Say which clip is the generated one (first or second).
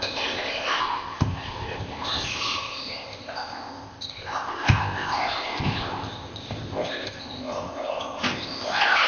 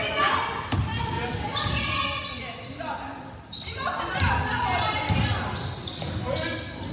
first